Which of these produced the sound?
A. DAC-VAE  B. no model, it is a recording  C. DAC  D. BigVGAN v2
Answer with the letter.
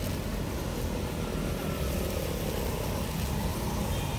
B